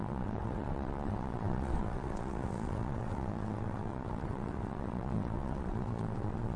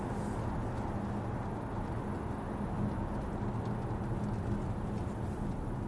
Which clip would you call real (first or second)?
second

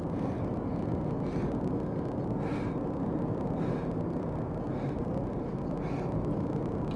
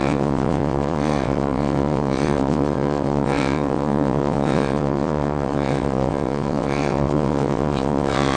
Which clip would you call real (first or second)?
first